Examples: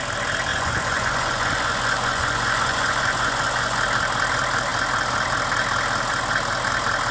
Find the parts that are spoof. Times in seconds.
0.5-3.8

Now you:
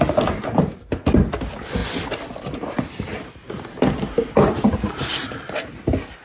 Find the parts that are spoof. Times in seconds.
none

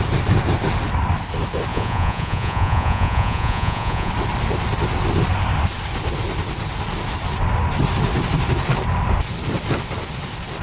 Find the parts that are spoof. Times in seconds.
1.7-4.1

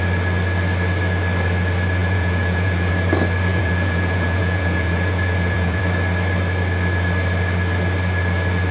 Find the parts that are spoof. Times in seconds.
2.0-2.9; 3.5-5.8

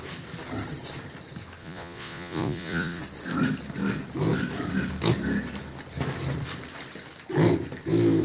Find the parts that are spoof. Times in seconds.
1.6-3.0

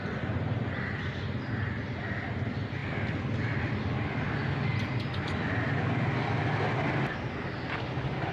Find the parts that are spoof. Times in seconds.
none